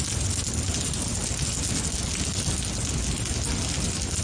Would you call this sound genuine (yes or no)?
yes